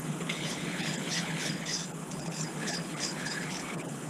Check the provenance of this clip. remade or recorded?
remade